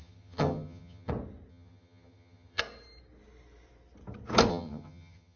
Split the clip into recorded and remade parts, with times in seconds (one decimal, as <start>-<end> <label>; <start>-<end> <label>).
0.0-1.1 remade; 1.1-1.5 recorded; 1.5-2.6 remade; 2.6-4.5 recorded; 4.5-5.4 remade